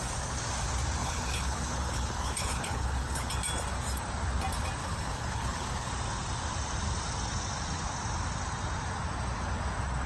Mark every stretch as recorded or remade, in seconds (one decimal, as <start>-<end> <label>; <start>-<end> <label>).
0.0-1.0 recorded; 1.0-3.3 remade; 3.3-4.8 recorded; 4.8-5.9 remade; 5.9-10.1 recorded